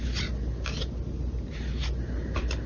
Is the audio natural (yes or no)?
yes